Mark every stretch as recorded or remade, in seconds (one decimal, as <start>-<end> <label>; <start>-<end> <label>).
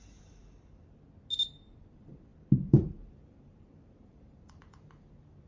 0.0-0.4 remade; 0.4-1.9 recorded; 1.9-5.5 remade